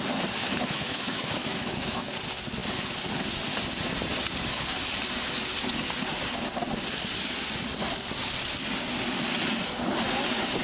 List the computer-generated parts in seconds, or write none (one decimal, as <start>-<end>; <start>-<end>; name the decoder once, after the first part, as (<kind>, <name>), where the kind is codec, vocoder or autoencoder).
0.4-2.1 (autoencoder, DAC-VAE)